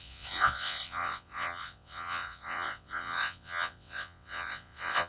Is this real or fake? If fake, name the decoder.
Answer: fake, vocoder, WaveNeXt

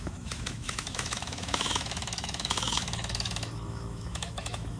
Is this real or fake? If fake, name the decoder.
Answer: fake, autoencoder, DAC-VAE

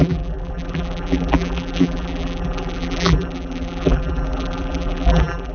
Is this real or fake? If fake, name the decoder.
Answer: fake, vocoder, BigVGAN v2